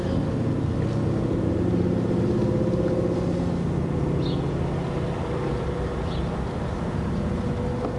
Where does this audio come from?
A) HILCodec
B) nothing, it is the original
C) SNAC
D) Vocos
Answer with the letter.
B